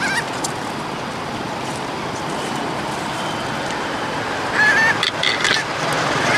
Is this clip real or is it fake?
real